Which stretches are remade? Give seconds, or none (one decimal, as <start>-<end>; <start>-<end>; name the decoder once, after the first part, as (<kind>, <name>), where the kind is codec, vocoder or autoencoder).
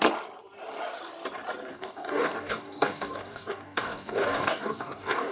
1.7-5.3 (codec, DAC)